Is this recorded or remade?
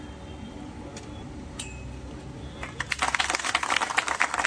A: recorded